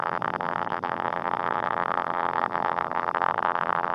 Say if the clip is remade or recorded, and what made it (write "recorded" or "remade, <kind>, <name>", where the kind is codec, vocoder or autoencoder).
remade, vocoder, BigVGAN v2